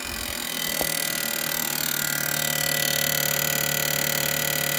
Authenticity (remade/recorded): recorded